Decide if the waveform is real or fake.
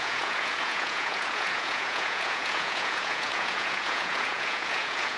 fake